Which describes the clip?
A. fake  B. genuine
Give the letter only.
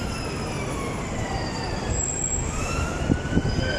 B